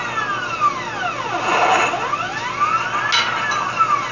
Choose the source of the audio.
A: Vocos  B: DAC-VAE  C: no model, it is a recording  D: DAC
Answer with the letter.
C